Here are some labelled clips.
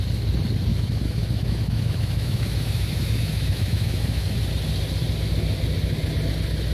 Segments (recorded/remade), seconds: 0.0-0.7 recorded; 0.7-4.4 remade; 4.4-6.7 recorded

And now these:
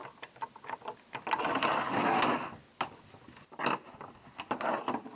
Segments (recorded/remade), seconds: 0.0-5.2 recorded

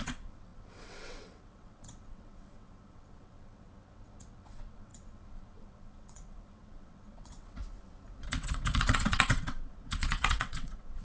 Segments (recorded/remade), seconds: 0.0-7.6 remade; 7.6-8.2 recorded; 8.2-11.0 remade

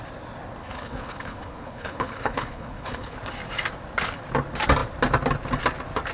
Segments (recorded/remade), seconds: 0.0-0.6 recorded; 0.6-3.2 remade; 3.2-6.1 recorded

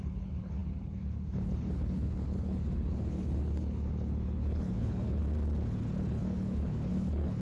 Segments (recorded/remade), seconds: 0.0-5.2 remade; 5.2-6.1 recorded; 6.1-7.4 remade